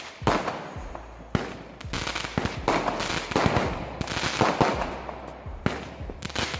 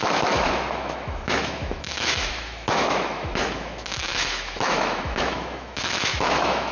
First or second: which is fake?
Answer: second